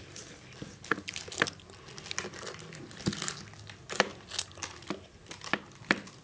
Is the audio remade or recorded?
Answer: recorded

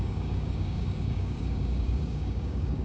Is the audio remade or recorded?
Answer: remade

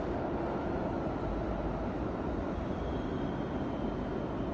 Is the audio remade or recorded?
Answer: recorded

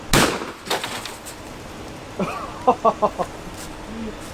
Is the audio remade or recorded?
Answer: recorded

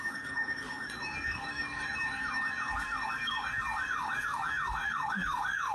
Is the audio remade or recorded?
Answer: remade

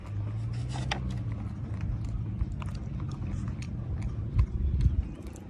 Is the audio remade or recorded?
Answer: recorded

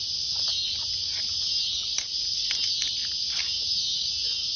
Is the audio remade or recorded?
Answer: recorded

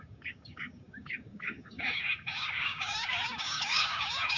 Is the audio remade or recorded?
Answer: remade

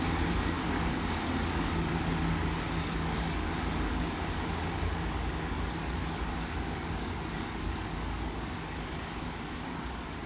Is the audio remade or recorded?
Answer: remade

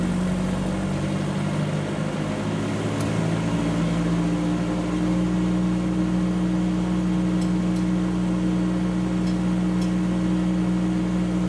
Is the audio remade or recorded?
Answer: recorded